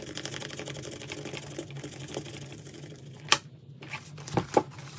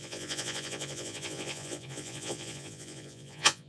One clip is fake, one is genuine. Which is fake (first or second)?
second